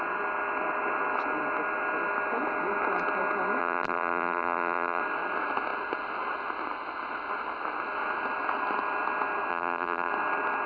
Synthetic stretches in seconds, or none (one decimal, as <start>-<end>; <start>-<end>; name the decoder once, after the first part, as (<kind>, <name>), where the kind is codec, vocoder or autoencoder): 3.6-5.0 (vocoder, BigVGAN v2); 9.5-10.1